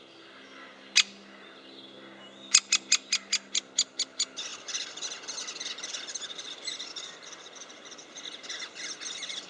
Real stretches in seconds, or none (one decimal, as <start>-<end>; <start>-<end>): 0.0-4.5